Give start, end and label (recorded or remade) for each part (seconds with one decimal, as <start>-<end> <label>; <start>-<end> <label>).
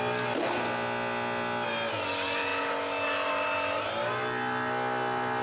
0.0-5.4 recorded